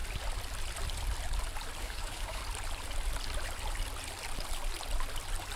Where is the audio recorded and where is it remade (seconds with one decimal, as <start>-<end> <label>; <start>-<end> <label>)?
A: 0.0-1.8 recorded; 1.8-2.4 remade; 2.4-5.6 recorded